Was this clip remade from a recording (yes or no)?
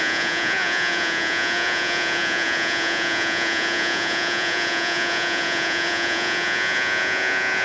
yes